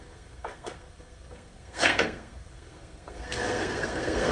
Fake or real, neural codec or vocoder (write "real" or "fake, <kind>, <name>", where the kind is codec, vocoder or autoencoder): fake, codec, SNAC